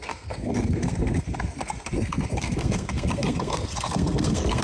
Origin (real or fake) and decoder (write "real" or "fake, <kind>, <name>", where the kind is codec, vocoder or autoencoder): fake, codec, SNAC